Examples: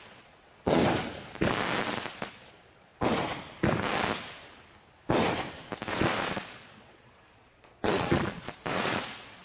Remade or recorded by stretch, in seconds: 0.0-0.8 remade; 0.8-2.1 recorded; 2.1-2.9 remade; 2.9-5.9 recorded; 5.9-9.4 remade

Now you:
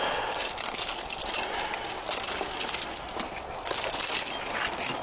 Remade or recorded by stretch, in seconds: 0.0-5.0 recorded

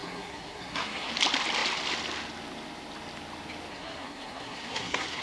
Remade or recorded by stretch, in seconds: 0.0-1.1 remade; 1.1-3.7 recorded; 3.7-5.2 remade

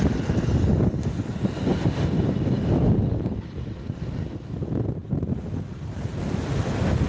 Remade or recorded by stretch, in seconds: 0.0-1.7 remade; 1.7-3.7 recorded; 3.7-5.0 remade; 5.0-5.7 recorded; 5.7-7.1 remade

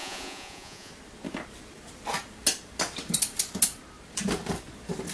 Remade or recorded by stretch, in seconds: 0.0-0.9 remade; 0.9-5.1 recorded

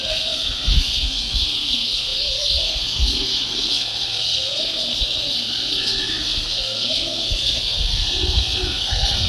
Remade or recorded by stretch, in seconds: 0.0-9.3 remade